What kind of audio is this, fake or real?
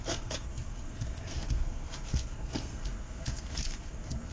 fake